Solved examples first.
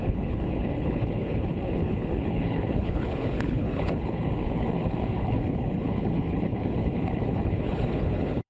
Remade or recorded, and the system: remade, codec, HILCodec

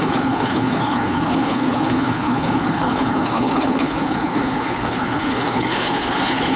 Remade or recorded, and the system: remade, codec, HILCodec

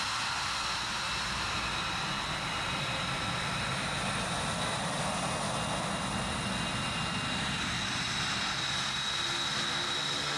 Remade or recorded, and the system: recorded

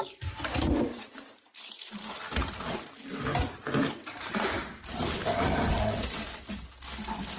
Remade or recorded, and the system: recorded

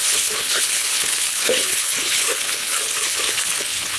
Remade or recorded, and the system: remade, codec, HILCodec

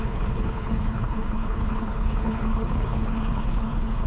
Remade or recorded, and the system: remade, codec, HILCodec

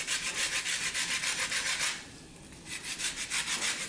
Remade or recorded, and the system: recorded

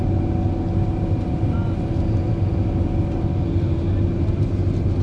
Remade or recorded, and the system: recorded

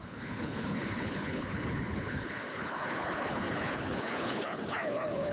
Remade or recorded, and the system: remade, codec, HILCodec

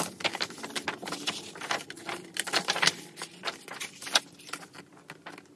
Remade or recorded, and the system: recorded